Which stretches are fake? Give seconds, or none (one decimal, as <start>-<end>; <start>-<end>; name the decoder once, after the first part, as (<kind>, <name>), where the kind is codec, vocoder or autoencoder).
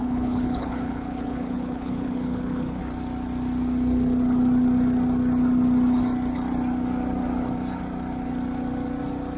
0.0-2.8 (codec, HILCodec)